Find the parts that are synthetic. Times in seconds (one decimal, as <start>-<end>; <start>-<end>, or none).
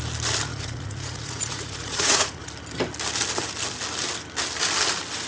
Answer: 0.5-2.5